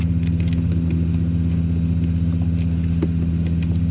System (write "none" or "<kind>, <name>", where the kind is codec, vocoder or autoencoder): none